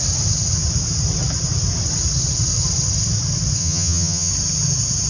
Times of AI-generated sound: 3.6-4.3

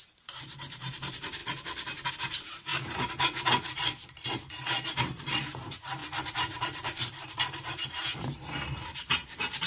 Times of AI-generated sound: 0.0-1.4; 2.1-2.7; 5.2-9.7

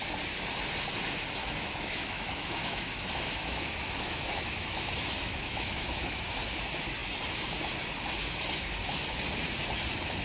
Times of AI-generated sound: 1.4-6.4

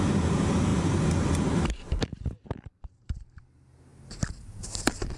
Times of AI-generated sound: 0.7-3.4

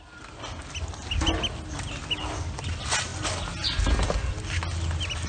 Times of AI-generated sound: none

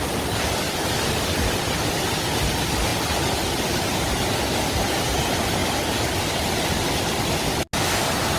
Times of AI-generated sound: none

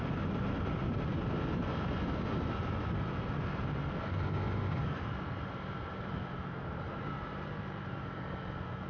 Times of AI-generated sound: 0.0-1.1; 5.9-8.9

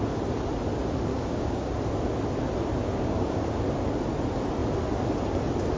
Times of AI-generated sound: 1.1-1.8; 2.8-3.5